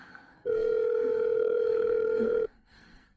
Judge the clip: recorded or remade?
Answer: remade